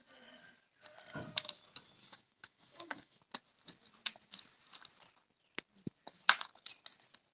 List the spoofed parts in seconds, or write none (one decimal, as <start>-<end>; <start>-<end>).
2.0-3.2